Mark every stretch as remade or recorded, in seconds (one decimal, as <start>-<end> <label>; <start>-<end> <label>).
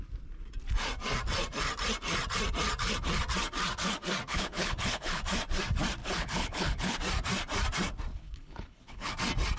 0.0-4.3 recorded; 4.3-5.2 remade; 5.2-6.0 recorded; 6.0-7.0 remade; 7.0-8.1 recorded; 8.1-9.1 remade; 9.1-9.6 recorded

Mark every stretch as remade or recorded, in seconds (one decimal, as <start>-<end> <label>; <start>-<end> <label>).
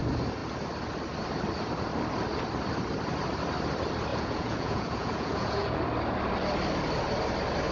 0.0-4.1 recorded; 4.1-5.8 remade; 5.8-7.7 recorded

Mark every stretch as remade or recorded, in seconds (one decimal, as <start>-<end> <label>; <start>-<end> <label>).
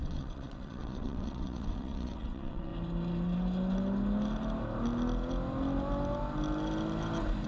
0.0-2.7 remade; 2.7-7.5 recorded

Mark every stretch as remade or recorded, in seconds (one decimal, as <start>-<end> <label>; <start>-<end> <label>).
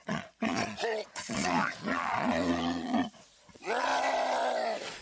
0.0-3.9 remade; 3.9-5.0 recorded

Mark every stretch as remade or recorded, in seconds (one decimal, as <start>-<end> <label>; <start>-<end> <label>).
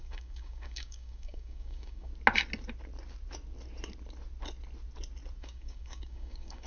0.0-2.1 remade; 2.1-5.4 recorded; 5.4-6.7 remade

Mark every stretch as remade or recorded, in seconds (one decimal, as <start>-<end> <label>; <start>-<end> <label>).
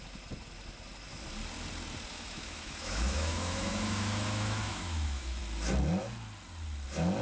0.0-2.1 recorded; 2.1-5.4 remade; 5.4-7.2 recorded